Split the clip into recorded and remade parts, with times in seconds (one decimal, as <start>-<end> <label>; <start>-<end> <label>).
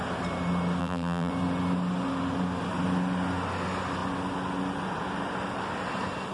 0.0-0.8 recorded; 0.8-1.3 remade; 1.3-6.3 recorded